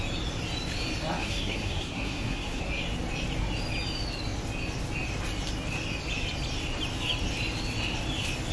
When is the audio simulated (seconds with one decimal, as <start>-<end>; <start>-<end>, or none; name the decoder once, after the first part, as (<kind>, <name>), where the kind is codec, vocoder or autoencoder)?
1.2-2.6 (codec, SNAC)